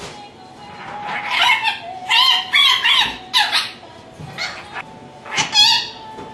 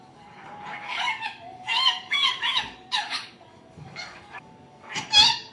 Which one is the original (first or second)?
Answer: first